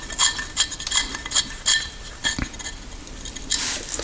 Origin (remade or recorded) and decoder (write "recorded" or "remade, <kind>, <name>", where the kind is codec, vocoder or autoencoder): recorded